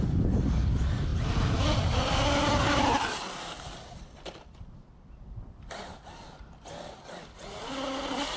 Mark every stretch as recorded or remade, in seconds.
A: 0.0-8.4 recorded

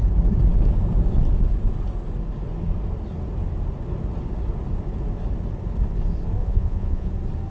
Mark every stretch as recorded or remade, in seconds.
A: 0.0-6.4 recorded; 6.4-7.1 remade; 7.1-7.5 recorded

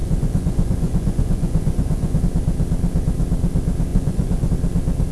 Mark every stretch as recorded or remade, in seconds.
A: 0.0-2.2 remade; 2.2-3.9 recorded; 3.9-4.5 remade; 4.5-5.1 recorded

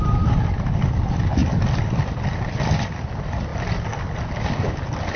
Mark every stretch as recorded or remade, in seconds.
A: 0.0-5.2 recorded

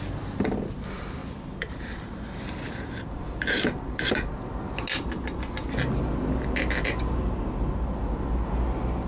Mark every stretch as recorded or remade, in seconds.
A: 0.0-1.2 recorded; 1.2-4.1 remade; 4.1-9.1 recorded